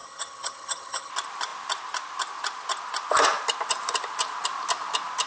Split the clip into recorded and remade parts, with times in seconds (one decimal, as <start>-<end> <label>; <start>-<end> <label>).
0.0-1.1 remade; 1.1-5.3 recorded